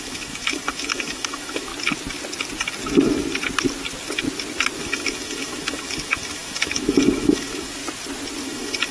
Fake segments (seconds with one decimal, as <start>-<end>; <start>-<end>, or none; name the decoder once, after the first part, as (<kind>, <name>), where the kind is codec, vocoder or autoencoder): 0.0-1.7 (autoencoder, DAC-VAE); 4.8-7.8; 8.4-8.9

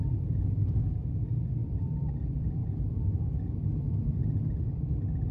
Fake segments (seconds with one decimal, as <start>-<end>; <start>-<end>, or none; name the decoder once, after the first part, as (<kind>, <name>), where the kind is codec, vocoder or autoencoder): 0.0-0.8 (vocoder, BigVGAN v2); 1.6-2.1; 2.6-3.1